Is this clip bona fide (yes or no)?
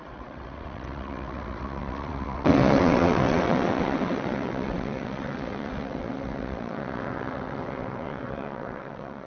no